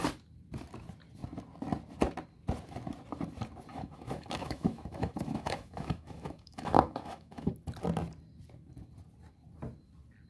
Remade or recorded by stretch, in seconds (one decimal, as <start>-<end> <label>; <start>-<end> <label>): 0.0-3.7 recorded; 3.7-7.5 remade; 7.5-10.3 recorded